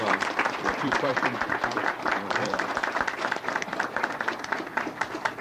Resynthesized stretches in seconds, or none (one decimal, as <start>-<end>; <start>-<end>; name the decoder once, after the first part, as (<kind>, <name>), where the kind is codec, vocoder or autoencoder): 0.0-1.1 (vocoder, BigVGAN v2); 2.4-5.4